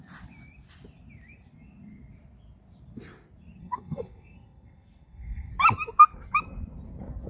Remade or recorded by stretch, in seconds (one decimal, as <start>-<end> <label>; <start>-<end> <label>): 0.0-3.6 recorded; 3.6-5.5 remade; 5.5-7.3 recorded